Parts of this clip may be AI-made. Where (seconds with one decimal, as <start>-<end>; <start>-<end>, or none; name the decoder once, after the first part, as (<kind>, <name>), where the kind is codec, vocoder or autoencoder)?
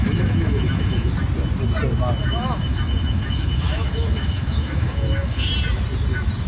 0.0-1.1 (autoencoder, DAC-VAE); 2.2-5.5